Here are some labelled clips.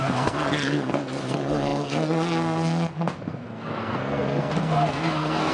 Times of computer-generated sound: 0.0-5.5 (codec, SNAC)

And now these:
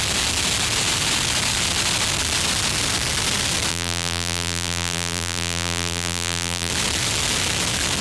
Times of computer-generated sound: 3.7-6.7 (vocoder, BigVGAN v2)

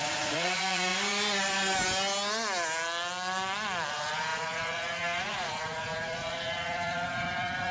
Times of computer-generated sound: 0.0-0.9 (vocoder, Vocos); 3.9-7.7

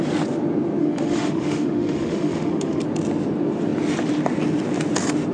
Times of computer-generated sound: 0.8-2.8 (autoencoder, DAC-VAE)

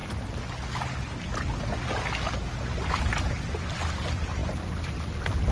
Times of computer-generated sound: none

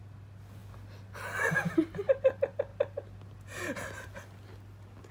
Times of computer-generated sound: none